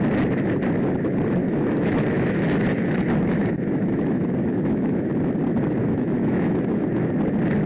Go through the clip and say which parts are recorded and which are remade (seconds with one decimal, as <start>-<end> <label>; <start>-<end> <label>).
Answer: 0.0-1.4 recorded; 1.4-5.1 remade; 5.1-5.8 recorded; 5.8-7.1 remade; 7.1-7.7 recorded